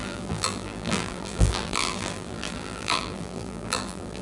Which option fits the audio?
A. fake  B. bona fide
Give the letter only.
A